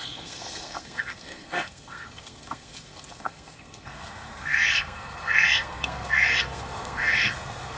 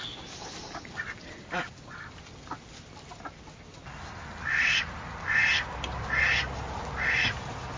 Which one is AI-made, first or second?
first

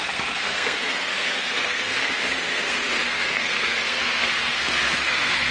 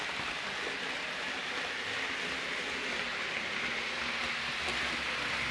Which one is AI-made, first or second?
first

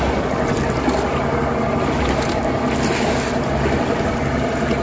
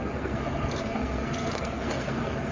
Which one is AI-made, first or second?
second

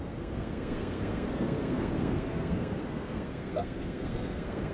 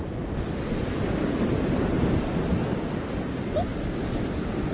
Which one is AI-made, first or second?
first